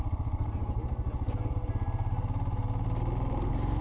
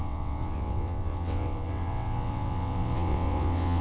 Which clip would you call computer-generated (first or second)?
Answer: second